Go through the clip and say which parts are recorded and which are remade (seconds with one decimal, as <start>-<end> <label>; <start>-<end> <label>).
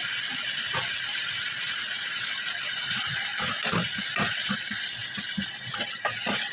0.0-6.5 recorded